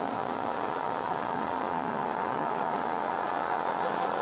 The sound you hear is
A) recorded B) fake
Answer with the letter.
B